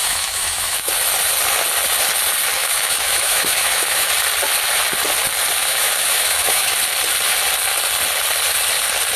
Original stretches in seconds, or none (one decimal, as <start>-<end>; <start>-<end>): 0.9-2.6; 4.1-5.6; 6.7-9.2